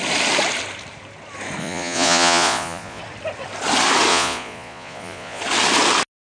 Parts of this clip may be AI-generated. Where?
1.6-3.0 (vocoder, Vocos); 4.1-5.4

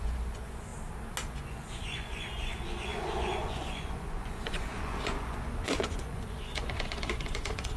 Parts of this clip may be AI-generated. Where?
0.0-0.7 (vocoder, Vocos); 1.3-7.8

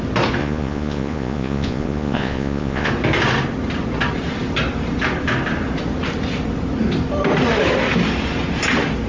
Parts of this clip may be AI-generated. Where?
0.4-2.9 (vocoder, Vocos)

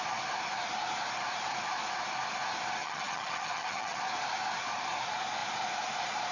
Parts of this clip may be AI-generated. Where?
2.8-4.0 (vocoder, HiFi-GAN)

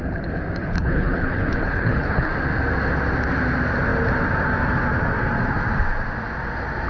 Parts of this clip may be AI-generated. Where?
0.6-2.3 (codec, HILCodec)